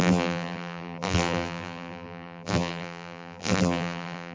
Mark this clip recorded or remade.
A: remade